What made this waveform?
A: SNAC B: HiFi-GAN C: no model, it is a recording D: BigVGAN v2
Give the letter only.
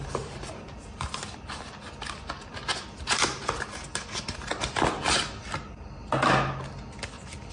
C